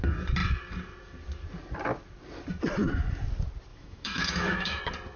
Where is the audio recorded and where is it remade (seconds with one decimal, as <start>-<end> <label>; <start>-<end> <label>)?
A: 0.0-3.7 recorded; 3.7-4.8 remade; 4.8-5.2 recorded